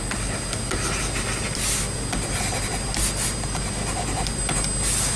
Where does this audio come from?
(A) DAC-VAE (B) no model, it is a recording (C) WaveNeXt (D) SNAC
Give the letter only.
B